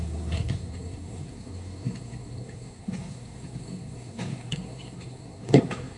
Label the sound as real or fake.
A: fake